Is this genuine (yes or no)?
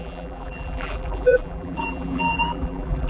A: no